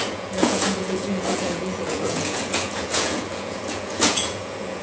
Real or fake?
fake